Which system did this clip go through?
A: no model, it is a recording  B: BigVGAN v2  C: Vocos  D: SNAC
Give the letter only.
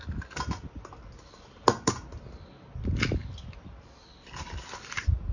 A